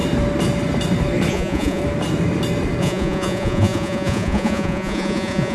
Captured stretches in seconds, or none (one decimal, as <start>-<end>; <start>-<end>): 0.0-1.3; 1.8-2.8